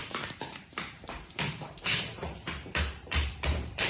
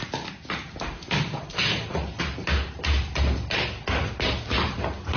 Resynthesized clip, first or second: first